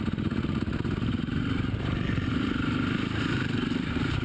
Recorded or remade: remade